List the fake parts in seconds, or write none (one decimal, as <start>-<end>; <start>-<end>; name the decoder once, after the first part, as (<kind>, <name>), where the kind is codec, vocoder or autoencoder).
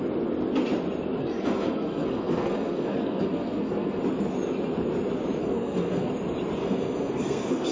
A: 1.2-4.0 (codec, SNAC); 5.4-6.1; 6.6-7.7